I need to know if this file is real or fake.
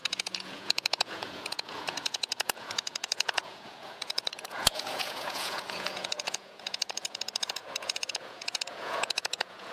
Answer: fake